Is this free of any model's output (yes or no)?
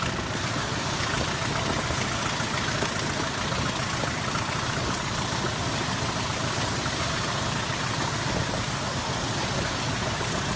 yes